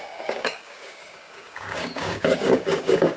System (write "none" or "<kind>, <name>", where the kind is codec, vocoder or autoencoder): codec, DAC